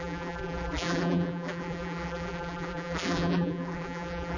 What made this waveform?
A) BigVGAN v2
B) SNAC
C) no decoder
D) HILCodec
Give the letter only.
A